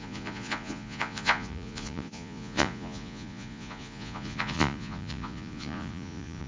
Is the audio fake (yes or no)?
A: yes